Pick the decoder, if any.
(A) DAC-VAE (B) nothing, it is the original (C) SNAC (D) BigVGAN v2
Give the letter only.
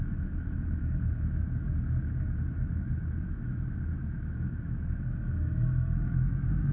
A